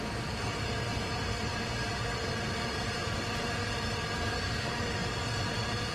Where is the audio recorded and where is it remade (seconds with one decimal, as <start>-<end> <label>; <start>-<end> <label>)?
0.0-5.9 recorded